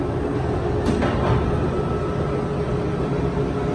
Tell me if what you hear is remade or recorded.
recorded